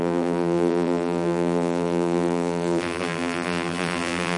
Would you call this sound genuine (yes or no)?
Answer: no